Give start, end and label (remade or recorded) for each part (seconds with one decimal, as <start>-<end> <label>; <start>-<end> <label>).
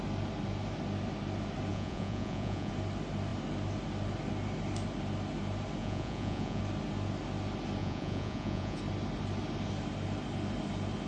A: 0.0-1.7 recorded; 1.7-2.7 remade; 2.7-5.8 recorded; 5.8-6.6 remade; 6.6-7.8 recorded; 7.8-8.8 remade; 8.8-11.1 recorded